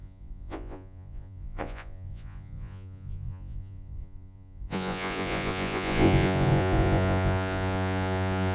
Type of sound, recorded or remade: remade